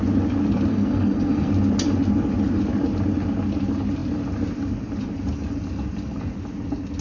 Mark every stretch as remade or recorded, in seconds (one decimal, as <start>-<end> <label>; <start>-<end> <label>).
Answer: 0.0-0.7 recorded; 0.7-1.5 remade; 1.5-7.0 recorded

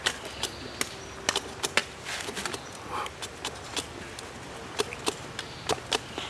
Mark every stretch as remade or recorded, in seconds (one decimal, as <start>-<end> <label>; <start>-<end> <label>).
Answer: 0.0-6.3 recorded

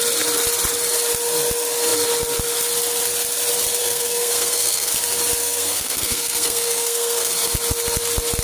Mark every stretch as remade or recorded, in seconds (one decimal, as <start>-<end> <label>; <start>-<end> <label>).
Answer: 0.0-3.8 recorded; 3.8-4.9 remade; 4.9-5.4 recorded; 5.4-7.3 remade; 7.3-8.4 recorded

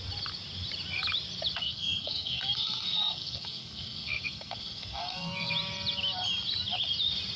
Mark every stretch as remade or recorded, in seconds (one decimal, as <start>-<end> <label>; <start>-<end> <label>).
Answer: 0.0-1.6 recorded; 1.6-5.5 remade; 5.5-7.4 recorded